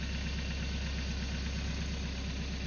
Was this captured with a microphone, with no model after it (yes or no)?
yes